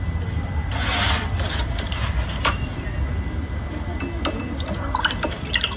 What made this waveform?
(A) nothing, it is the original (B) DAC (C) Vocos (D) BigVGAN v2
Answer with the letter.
A